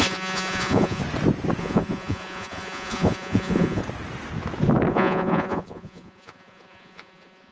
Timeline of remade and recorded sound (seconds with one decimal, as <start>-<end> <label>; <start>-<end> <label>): 0.0-1.0 remade; 1.0-1.6 recorded; 1.6-3.8 remade; 3.8-4.9 recorded; 4.9-7.5 remade